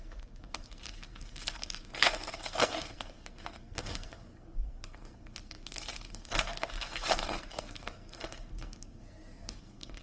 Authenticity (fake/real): fake